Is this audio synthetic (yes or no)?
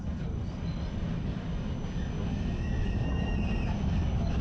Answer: no